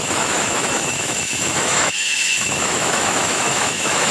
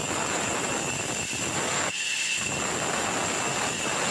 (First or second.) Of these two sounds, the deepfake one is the first